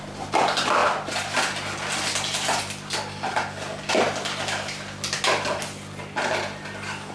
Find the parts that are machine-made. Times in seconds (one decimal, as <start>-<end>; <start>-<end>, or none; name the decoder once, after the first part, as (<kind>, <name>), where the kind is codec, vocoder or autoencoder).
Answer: none